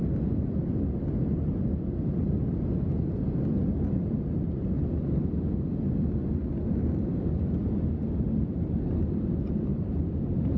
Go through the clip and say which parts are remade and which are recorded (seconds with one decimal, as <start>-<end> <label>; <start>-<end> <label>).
0.0-10.6 recorded